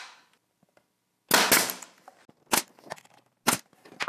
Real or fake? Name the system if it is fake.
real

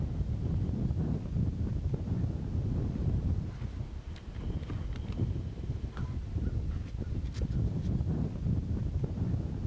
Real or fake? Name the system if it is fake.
real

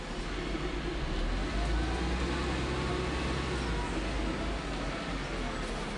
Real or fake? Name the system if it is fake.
real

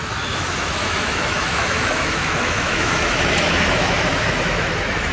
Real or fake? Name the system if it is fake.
fake, autoencoder, DAC-VAE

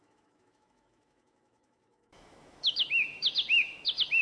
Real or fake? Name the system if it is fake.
fake, autoencoder, DAC-VAE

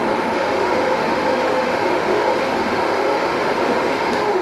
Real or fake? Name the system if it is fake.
fake, autoencoder, DAC-VAE